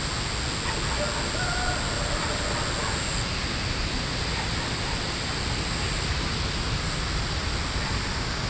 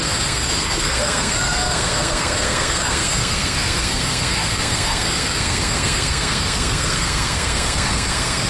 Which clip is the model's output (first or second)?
second